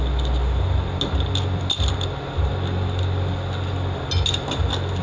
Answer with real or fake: real